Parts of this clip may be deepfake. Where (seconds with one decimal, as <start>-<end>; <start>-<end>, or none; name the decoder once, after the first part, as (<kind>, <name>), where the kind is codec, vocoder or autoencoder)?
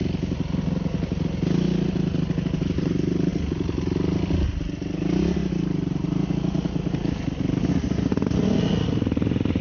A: none